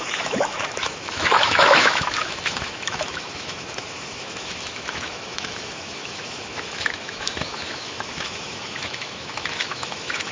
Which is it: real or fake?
fake